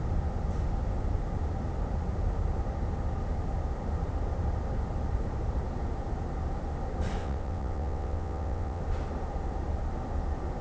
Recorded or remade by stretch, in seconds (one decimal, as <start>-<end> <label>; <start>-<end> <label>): 0.0-7.2 recorded; 7.2-8.8 remade; 8.8-10.6 recorded